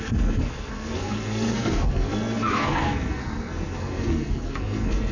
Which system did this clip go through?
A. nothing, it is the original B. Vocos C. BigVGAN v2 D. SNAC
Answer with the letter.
D